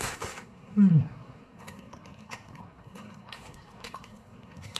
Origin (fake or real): fake